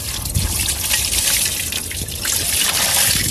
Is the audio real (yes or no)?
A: yes